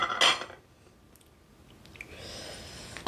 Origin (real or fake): real